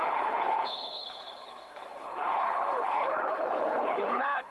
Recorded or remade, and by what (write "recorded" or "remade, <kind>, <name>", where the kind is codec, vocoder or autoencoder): remade, codec, HILCodec